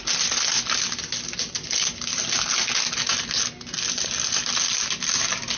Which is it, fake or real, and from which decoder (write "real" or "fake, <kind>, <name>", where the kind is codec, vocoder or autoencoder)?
real